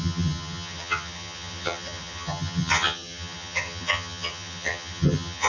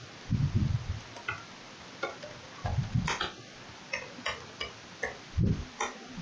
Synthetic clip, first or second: first